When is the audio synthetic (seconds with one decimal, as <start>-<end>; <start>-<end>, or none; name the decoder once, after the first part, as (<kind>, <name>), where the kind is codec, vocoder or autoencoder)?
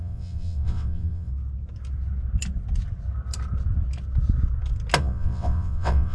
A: 0.0-1.3 (vocoder, WaveNeXt); 5.0-6.1